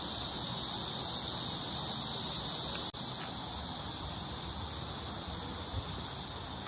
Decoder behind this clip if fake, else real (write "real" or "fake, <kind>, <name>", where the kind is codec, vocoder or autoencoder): real